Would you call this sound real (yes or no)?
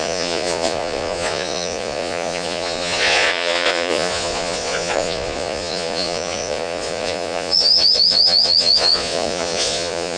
no